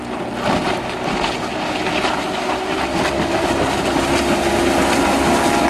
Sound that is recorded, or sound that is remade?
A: recorded